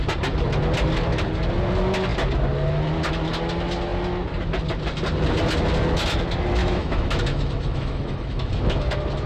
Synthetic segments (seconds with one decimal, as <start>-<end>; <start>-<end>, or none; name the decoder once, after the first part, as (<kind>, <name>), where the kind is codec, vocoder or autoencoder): 6.6-8.9 (autoencoder, DAC-VAE)